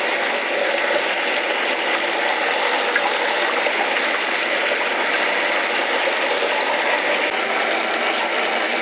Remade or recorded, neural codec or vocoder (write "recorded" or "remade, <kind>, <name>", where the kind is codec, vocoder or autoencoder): recorded